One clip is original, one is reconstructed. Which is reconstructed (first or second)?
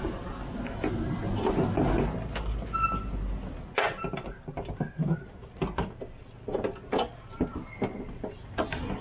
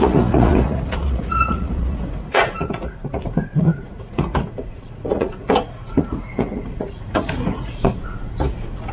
second